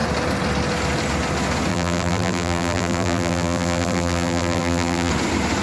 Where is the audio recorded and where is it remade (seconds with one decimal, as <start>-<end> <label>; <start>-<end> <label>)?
0.0-1.7 recorded; 1.7-5.1 remade; 5.1-5.6 recorded